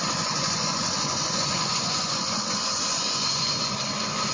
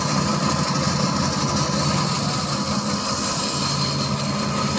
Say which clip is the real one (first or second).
second